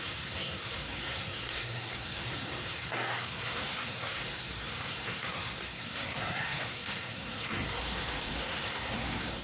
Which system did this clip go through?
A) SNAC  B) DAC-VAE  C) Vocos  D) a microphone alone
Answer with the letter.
A